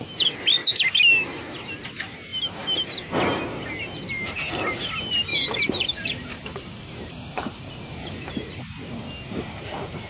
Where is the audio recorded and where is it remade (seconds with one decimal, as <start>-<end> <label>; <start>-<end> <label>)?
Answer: 0.0-5.3 recorded; 5.3-8.6 remade; 8.6-10.1 recorded